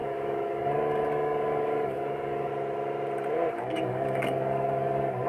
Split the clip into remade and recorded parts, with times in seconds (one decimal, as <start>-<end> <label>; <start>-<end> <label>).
0.0-2.5 remade; 2.5-3.5 recorded; 3.5-5.3 remade